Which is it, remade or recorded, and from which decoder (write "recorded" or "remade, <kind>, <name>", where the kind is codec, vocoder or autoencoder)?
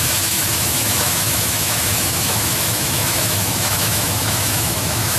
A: remade, autoencoder, DAC-VAE